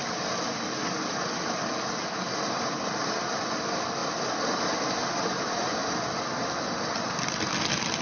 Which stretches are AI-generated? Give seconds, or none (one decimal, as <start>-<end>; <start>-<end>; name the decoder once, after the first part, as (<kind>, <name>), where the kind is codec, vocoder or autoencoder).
0.0-8.0 (vocoder, BigVGAN v2)